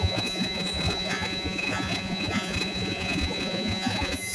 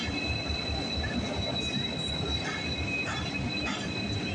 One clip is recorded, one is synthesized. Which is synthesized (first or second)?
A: first